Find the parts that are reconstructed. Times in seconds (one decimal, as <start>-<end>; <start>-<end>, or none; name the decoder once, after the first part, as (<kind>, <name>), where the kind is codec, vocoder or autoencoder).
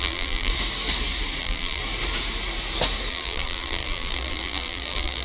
0.0-0.5 (vocoder, BigVGAN v2); 1.4-1.8; 3.1-5.2